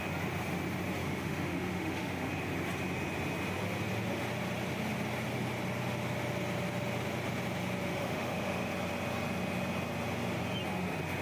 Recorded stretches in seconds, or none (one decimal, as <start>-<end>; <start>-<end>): 0.0-1.0; 2.3-7.9; 8.7-11.2